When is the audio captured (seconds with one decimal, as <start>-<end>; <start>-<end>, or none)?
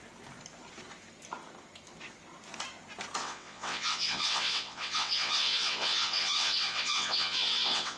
0.0-3.2